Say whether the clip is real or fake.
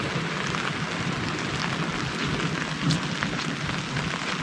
real